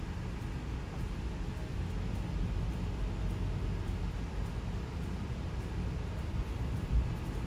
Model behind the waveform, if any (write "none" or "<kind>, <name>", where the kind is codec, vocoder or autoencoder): none